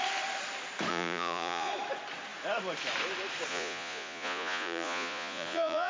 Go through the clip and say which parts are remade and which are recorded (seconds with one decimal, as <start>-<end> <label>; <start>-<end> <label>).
0.0-0.9 recorded; 0.9-1.7 remade; 1.7-3.5 recorded; 3.5-5.9 remade